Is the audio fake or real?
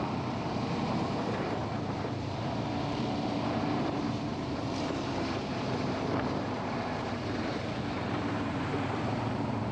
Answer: fake